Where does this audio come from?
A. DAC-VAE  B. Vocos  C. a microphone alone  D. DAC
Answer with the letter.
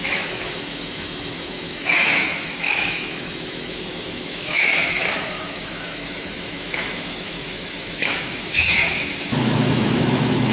A